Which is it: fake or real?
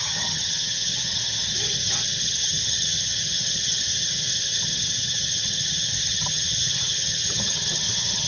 fake